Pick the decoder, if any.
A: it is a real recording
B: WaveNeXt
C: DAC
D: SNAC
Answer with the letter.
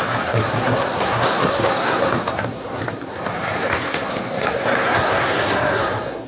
D